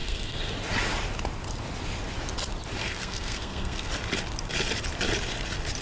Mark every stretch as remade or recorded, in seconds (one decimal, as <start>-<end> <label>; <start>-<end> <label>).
0.0-0.5 remade; 0.5-2.8 recorded; 2.8-3.9 remade; 3.9-5.8 recorded